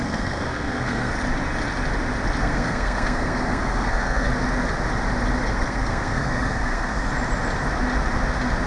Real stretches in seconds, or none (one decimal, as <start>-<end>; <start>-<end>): 1.1-2.4; 4.3-5.4; 7.1-8.7